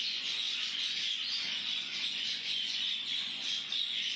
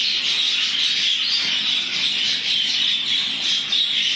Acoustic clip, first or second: second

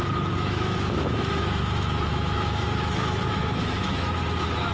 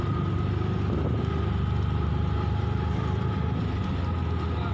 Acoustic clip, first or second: second